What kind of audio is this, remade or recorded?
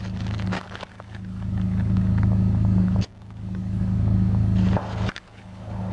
remade